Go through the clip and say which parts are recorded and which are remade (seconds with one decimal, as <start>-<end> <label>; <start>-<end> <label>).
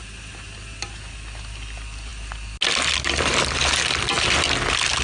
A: 0.0-5.0 recorded